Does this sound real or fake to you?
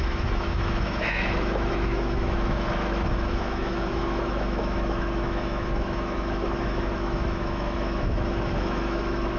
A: fake